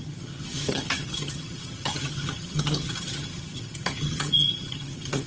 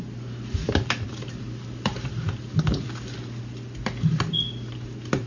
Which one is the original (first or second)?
second